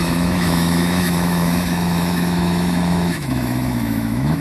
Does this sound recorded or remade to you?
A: remade